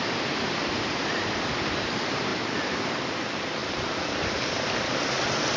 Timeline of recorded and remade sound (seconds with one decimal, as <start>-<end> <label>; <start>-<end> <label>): 0.0-5.6 recorded